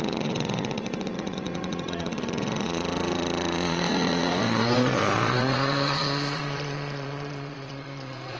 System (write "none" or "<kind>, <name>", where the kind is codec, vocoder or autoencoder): vocoder, Vocos